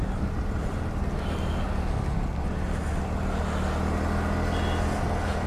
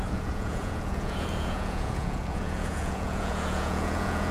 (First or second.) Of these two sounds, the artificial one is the second